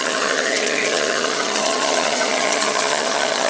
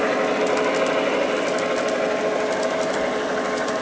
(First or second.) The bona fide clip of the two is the second